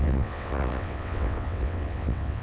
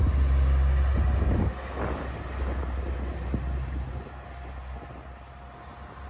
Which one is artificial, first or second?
first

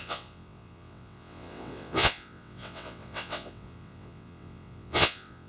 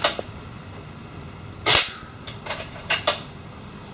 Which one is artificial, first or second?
first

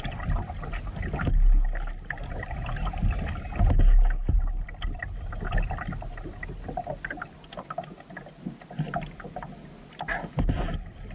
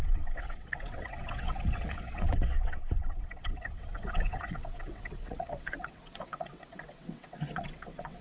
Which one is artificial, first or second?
second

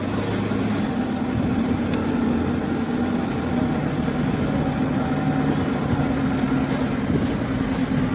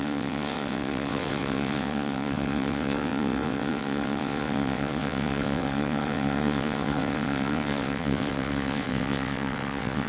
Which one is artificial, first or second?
second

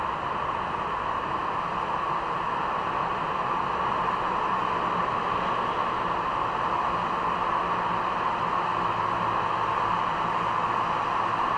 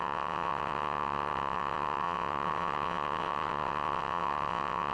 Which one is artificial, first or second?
second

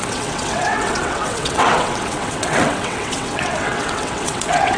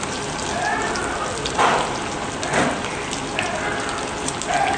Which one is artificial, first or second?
first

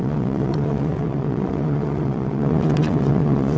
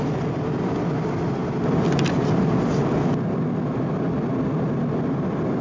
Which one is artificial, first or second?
first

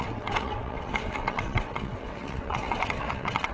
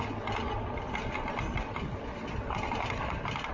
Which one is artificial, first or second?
first